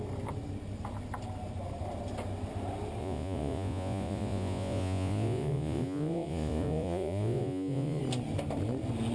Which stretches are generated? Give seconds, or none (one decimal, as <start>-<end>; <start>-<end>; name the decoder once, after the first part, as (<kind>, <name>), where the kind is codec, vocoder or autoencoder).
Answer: 3.0-8.0 (vocoder, Vocos)